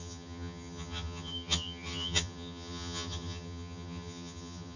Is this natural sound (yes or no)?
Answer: no